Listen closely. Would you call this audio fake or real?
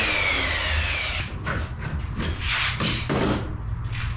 real